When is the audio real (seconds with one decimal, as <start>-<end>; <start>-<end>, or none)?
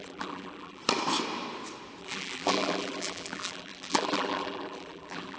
0.8-2.0